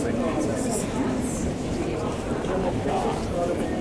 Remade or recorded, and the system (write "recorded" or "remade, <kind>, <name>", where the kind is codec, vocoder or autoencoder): remade, vocoder, BigVGAN v2